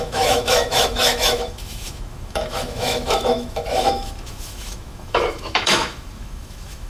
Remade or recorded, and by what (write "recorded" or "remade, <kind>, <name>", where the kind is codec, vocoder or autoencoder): remade, autoencoder, DAC-VAE